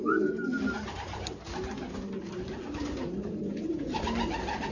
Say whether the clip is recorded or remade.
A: recorded